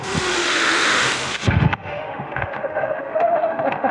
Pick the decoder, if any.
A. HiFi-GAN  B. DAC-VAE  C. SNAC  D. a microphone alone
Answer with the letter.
B